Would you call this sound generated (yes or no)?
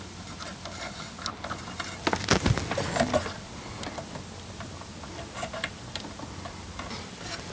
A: no